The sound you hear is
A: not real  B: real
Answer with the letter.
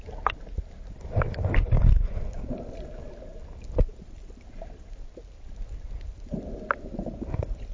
A